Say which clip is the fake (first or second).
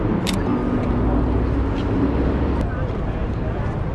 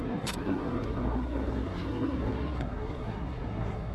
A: second